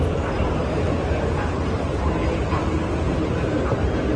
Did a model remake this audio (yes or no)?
no